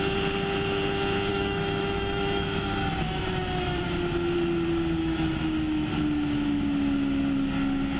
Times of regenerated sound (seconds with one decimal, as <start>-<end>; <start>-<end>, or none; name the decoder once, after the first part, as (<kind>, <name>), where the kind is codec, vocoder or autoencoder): 1.3-3.9 (autoencoder, DAC-VAE); 5.0-5.9